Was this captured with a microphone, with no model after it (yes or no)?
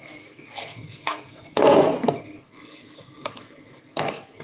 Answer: no